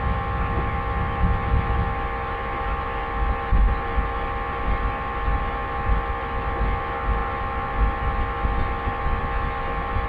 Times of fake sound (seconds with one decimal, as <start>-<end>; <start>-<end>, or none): none